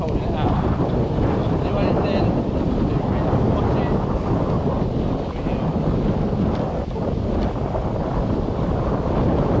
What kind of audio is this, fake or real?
real